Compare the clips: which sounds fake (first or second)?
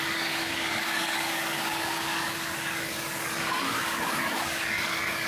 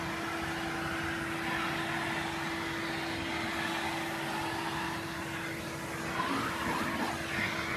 first